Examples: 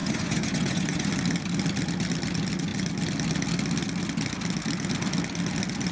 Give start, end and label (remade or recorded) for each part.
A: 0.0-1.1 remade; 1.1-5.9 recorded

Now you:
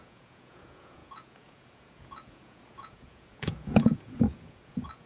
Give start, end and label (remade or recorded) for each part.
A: 0.0-5.1 remade

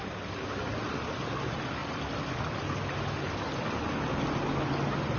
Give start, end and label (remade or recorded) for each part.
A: 0.0-5.2 recorded

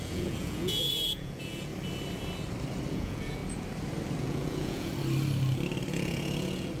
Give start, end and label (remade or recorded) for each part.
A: 0.0-1.7 remade; 1.7-2.9 recorded; 2.9-3.4 remade; 3.4-4.2 recorded; 4.2-4.9 remade; 4.9-5.9 recorded; 5.9-6.8 remade